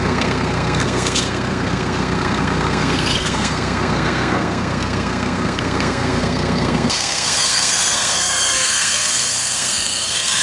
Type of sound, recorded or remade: remade